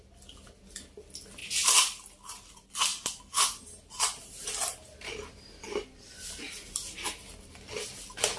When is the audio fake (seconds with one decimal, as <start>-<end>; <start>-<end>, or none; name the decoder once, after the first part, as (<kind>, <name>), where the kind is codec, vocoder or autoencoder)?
none